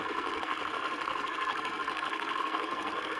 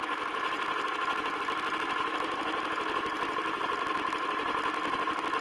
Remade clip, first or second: first